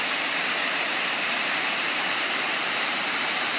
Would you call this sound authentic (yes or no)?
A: no